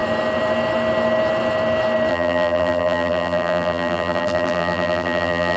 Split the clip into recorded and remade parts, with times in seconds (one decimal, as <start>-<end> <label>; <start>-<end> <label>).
0.0-2.1 recorded; 2.1-5.6 remade